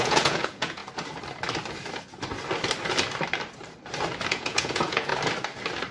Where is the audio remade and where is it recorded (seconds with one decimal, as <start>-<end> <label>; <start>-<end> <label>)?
0.0-0.8 remade; 0.8-4.3 recorded; 4.3-5.1 remade; 5.1-5.9 recorded